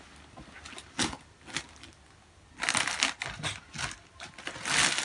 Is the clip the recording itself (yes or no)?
yes